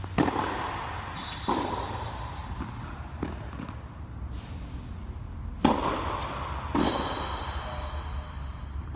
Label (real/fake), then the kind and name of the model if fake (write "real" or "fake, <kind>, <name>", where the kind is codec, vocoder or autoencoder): real